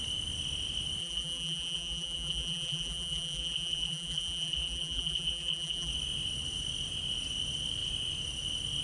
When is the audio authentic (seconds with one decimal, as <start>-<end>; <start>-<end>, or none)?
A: 0.0-1.0; 5.9-8.8